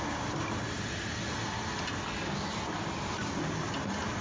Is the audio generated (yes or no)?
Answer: no